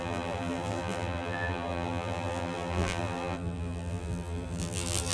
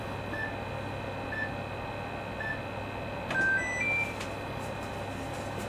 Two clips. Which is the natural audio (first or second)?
second